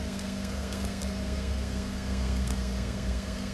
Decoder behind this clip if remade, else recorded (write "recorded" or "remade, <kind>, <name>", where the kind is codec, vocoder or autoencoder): remade, codec, SNAC